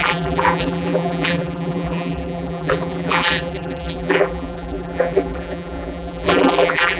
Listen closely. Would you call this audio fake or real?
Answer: fake